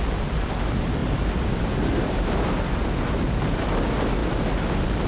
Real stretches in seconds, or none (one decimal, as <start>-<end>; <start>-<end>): 0.0-1.0; 2.5-5.1

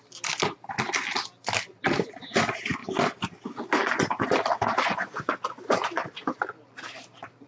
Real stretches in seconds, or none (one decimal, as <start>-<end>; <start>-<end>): 0.0-2.8; 3.4-3.8; 6.2-7.5

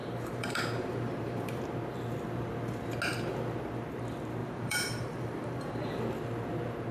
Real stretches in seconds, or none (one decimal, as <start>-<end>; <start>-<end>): 1.6-4.4; 6.0-6.9